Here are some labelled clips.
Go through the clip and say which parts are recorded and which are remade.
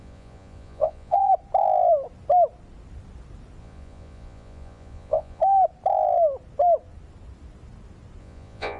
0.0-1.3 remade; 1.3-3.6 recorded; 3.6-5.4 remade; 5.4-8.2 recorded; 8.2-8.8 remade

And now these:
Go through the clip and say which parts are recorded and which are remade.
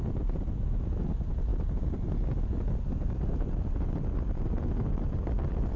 0.0-5.8 recorded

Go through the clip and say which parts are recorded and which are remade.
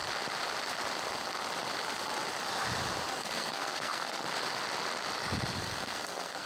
0.0-3.1 recorded; 3.1-4.2 remade; 4.2-5.6 recorded; 5.6-6.5 remade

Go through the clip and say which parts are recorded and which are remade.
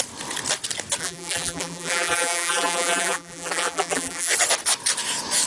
0.0-1.0 recorded; 1.0-4.3 remade; 4.3-5.5 recorded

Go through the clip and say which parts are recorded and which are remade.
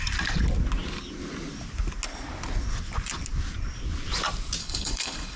0.0-4.6 recorded; 4.6-5.4 remade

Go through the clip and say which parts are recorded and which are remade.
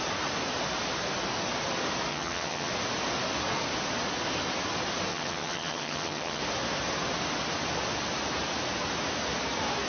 0.0-2.1 recorded; 2.1-2.7 remade; 2.7-5.1 recorded; 5.1-6.4 remade; 6.4-9.9 recorded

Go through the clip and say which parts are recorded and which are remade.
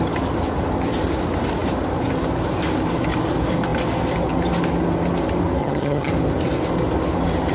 0.0-5.6 recorded; 5.6-6.1 remade; 6.1-7.5 recorded